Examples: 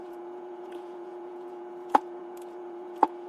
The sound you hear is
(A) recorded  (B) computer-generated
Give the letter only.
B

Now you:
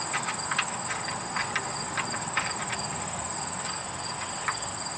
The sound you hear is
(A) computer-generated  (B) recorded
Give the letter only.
B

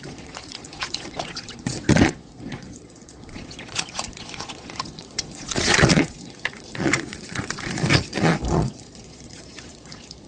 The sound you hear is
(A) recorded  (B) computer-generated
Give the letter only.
B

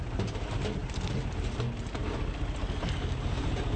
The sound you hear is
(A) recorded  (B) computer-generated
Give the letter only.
A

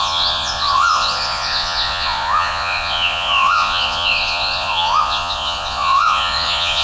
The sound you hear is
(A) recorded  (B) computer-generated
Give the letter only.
B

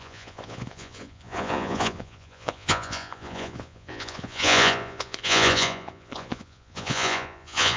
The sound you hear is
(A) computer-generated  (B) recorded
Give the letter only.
A